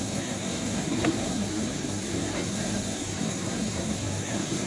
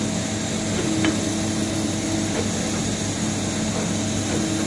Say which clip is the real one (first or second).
second